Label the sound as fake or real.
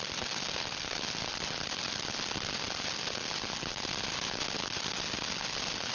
real